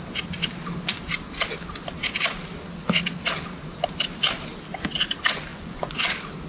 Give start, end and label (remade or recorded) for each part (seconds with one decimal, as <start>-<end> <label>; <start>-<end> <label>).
0.0-5.5 recorded; 5.5-6.0 remade; 6.0-6.5 recorded